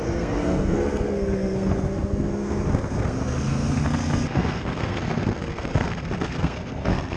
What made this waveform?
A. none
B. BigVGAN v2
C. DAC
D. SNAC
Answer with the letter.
D